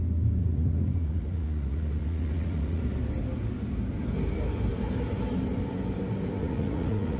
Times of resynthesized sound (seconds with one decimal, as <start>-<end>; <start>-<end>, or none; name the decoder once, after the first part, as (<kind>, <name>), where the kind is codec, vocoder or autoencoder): 0.4-2.8 (vocoder, Vocos); 6.4-7.2